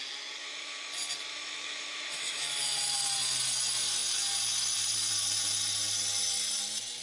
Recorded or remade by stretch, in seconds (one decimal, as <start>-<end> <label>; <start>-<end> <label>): 0.0-0.4 recorded; 0.4-0.9 remade; 0.9-1.3 recorded; 1.3-2.4 remade; 2.4-7.0 recorded

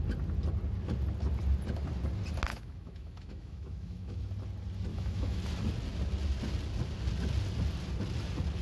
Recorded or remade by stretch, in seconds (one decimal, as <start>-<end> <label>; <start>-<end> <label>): 0.0-2.5 recorded; 2.5-4.2 remade; 4.2-4.9 recorded; 4.9-5.4 remade; 5.4-8.6 recorded

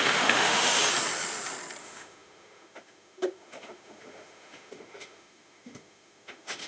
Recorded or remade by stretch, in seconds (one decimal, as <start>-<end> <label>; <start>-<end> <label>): 0.0-0.8 remade; 0.8-1.8 recorded; 1.8-6.7 remade